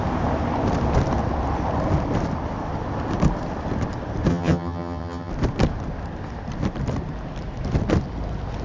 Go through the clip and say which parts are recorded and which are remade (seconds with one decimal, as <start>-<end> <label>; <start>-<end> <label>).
0.0-4.3 recorded; 4.3-5.3 remade; 5.3-8.6 recorded